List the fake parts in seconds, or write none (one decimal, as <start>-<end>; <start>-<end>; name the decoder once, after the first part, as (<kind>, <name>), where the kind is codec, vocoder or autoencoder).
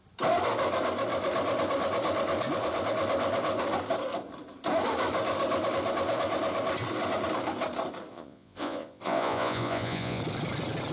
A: 8.1-10.2 (vocoder, Vocos)